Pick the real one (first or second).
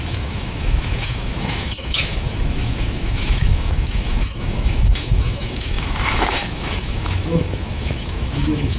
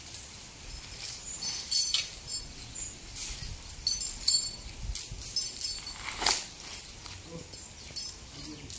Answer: second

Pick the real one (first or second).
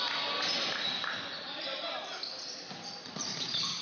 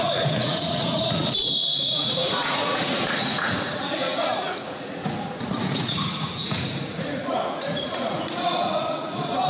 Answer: first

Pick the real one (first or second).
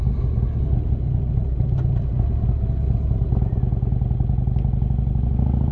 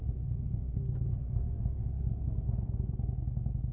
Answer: first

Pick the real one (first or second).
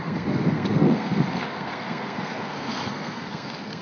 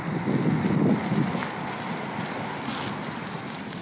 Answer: second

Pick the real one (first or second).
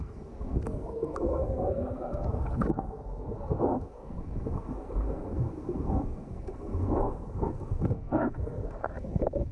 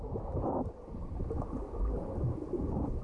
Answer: second